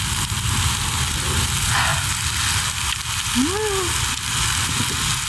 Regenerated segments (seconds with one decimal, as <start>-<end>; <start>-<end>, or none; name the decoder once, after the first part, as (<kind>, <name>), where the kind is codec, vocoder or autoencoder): none